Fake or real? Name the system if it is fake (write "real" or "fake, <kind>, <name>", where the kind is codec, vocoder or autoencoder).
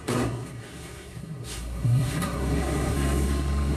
fake, codec, SNAC